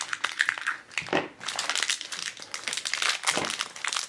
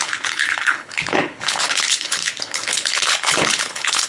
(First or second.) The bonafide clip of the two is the first